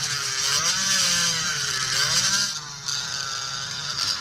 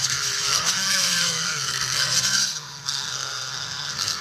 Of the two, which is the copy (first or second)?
second